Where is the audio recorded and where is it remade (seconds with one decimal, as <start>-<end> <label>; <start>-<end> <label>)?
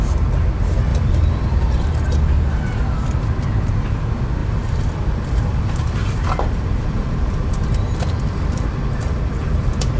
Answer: 0.0-0.9 recorded; 0.9-1.9 remade; 1.9-4.4 recorded; 4.4-10.0 remade